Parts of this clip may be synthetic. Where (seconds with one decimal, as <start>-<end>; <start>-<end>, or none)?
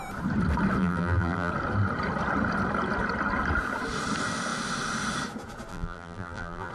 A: 0.8-1.5; 5.7-6.7